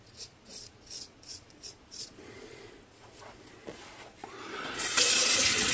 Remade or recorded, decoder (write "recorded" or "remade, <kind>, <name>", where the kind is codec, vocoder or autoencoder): remade, vocoder, Vocos